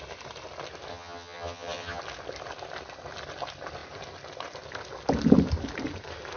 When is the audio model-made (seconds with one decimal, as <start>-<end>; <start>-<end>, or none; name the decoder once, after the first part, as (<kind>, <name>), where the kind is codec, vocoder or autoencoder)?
0.9-2.0 (vocoder, HiFi-GAN)